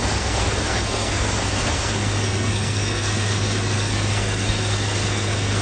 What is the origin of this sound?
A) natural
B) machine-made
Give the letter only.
B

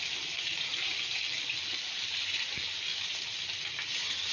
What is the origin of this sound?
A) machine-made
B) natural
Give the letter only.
B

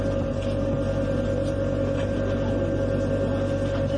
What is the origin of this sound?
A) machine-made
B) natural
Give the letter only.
B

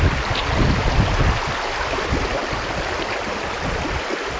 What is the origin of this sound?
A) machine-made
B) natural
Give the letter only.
B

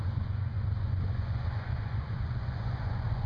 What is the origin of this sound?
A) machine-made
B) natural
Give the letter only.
A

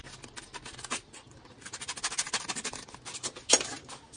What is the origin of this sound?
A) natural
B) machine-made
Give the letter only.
A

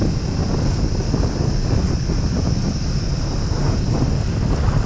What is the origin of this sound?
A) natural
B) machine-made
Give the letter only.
A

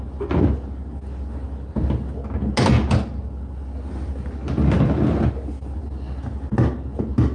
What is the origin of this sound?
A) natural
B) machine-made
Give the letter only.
A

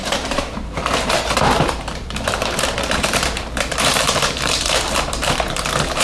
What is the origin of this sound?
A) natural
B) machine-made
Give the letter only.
B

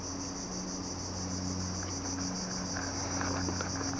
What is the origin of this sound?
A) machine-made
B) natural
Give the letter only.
B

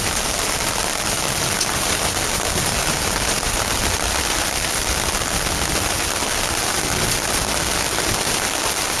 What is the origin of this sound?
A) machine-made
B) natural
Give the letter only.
B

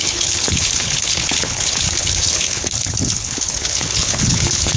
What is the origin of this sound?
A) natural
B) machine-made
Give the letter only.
B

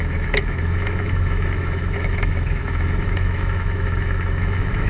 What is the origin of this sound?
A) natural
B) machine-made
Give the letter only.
B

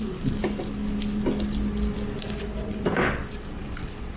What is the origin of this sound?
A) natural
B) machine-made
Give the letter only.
A